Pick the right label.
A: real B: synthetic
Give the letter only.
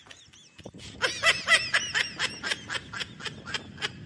A